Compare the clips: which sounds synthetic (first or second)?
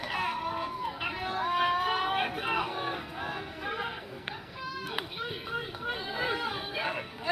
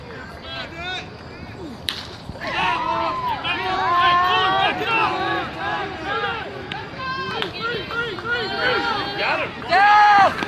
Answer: first